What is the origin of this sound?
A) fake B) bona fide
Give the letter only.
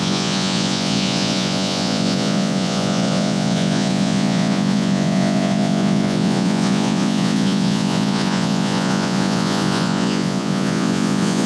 A